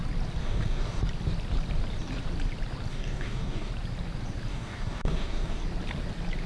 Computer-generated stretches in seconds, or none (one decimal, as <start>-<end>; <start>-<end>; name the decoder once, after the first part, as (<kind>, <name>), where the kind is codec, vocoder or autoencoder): 0.4-1.0 (codec, DAC); 2.9-3.7; 4.5-5.6